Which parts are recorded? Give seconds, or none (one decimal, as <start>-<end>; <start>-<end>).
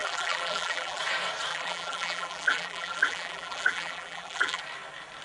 1.0-1.5; 4.6-5.2